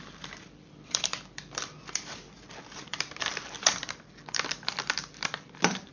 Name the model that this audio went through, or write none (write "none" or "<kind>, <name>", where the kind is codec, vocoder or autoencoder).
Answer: vocoder, BigVGAN v2